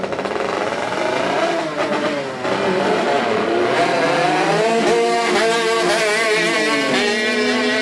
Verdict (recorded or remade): recorded